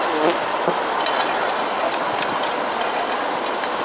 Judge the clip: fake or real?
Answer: real